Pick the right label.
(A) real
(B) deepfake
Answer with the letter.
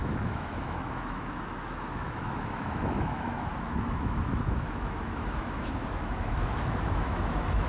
B